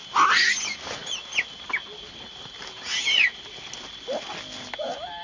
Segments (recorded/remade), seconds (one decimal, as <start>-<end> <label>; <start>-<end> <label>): 0.0-5.2 recorded